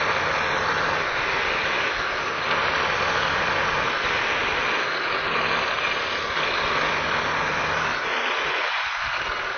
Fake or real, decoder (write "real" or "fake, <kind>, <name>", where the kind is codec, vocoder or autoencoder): real